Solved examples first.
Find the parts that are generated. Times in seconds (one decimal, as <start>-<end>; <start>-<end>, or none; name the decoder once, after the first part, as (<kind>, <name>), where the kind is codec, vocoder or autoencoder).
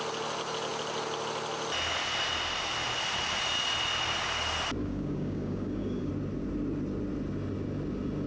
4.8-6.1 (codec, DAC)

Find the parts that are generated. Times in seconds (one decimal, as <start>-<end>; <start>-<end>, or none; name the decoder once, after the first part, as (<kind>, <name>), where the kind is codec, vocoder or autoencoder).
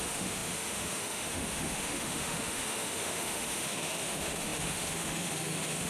0.0-5.9 (autoencoder, DAC-VAE)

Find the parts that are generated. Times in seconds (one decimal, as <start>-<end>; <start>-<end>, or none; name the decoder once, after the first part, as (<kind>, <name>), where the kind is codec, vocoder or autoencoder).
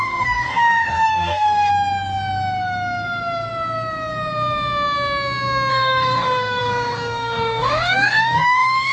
0.0-1.7 (codec, DAC); 5.7-8.9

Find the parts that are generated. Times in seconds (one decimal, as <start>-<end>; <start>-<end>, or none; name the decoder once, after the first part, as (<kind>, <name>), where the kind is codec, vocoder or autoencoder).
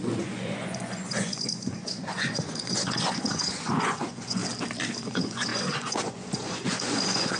0.0-4.4 (vocoder, Vocos); 5.0-7.4